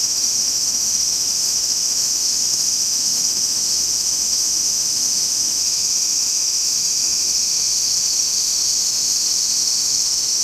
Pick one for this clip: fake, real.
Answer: fake